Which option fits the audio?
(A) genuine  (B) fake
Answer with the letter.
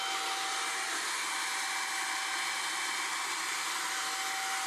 A